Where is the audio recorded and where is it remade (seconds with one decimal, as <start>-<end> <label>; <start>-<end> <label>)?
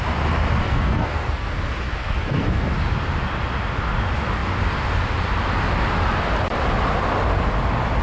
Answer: 0.0-0.6 recorded; 0.6-1.5 remade; 1.5-2.0 recorded; 2.0-2.7 remade; 2.7-8.0 recorded